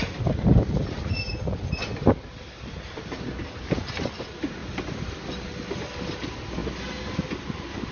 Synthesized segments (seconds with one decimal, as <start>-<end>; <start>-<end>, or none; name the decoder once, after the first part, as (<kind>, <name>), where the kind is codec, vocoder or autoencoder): none